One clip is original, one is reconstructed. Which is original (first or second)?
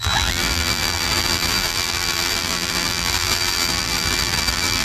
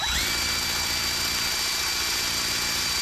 second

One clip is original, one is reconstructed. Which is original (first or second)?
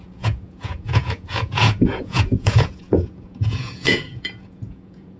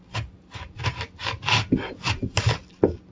second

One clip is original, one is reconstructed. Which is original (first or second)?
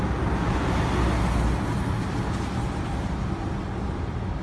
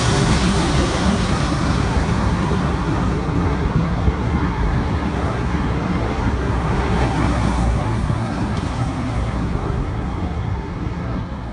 first